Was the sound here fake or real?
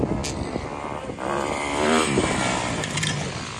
real